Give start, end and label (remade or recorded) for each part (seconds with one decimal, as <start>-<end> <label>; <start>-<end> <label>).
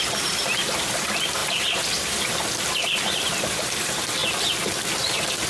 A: 0.0-4.2 remade; 4.2-5.0 recorded; 5.0-5.5 remade